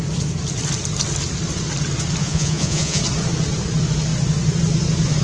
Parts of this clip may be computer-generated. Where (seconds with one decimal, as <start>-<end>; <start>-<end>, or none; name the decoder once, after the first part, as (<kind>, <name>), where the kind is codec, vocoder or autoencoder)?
2.2-3.0 (vocoder, Vocos)